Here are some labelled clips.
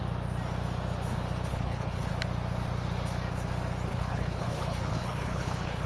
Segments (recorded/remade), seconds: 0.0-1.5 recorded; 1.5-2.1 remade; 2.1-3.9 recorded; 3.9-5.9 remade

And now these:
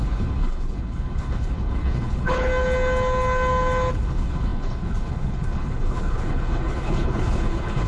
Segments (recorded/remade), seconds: 0.0-2.5 remade; 2.5-3.9 recorded; 3.9-7.9 remade